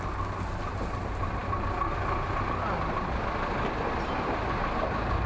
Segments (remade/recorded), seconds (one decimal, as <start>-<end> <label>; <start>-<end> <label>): 0.0-5.3 recorded